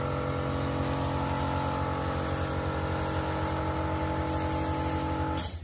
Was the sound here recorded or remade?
recorded